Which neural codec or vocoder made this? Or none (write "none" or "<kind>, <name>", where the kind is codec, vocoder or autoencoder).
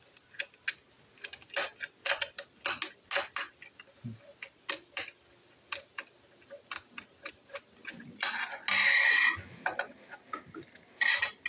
none